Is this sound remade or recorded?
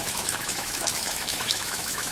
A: remade